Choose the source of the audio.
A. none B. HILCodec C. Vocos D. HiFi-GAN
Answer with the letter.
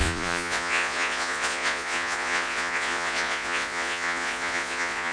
C